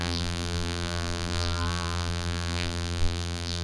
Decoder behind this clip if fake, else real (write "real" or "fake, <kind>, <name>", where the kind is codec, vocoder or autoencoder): fake, vocoder, BigVGAN v2